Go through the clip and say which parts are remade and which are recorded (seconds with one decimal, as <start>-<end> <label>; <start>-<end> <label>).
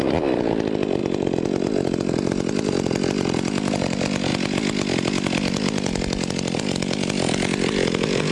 0.0-8.3 recorded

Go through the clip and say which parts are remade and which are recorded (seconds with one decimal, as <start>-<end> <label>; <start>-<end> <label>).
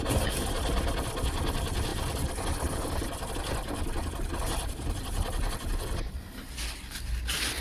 0.0-7.6 recorded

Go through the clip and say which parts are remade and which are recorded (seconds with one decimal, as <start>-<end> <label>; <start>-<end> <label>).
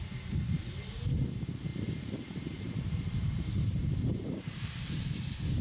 0.0-1.7 recorded; 1.7-5.1 remade; 5.1-5.6 recorded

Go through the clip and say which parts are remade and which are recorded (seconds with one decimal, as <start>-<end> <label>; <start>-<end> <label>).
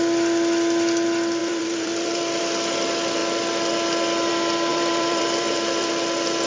0.0-1.4 recorded; 1.4-2.4 remade; 2.4-4.7 recorded; 4.7-5.9 remade; 5.9-6.5 recorded